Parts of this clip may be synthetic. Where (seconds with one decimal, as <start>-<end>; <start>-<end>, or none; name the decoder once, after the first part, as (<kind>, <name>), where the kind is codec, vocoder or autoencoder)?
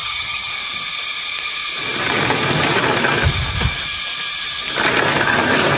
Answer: 0.0-0.5 (vocoder, HiFi-GAN)